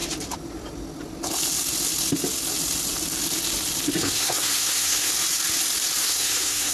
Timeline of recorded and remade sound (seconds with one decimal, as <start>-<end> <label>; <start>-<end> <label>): 0.0-4.0 recorded; 4.0-5.1 remade; 5.1-6.0 recorded; 6.0-6.7 remade